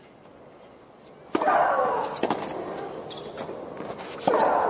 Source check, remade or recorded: recorded